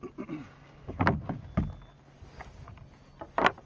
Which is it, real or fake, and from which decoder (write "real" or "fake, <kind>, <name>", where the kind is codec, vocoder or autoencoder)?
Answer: real